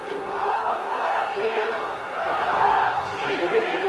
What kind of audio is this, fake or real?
fake